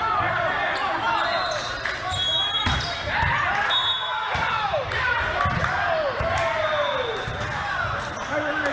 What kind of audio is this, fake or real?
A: real